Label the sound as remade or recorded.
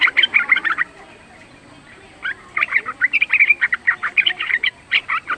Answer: recorded